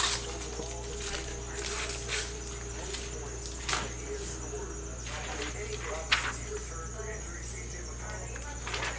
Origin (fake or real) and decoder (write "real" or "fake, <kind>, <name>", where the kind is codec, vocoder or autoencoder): real